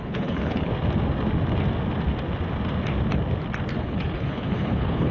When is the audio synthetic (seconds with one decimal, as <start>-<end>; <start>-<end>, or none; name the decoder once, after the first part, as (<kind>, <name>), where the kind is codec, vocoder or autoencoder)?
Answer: 0.0-0.7 (codec, HILCodec); 3.8-5.1